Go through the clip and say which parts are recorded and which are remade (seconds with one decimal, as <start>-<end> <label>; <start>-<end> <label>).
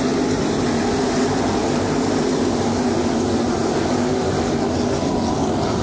0.0-5.8 recorded